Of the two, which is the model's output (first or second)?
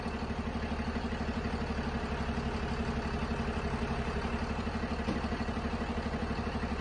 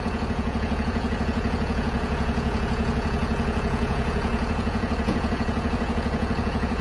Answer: second